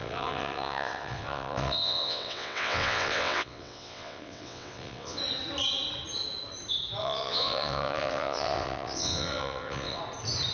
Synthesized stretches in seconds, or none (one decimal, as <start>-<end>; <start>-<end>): 0.0-5.2; 7.0-10.0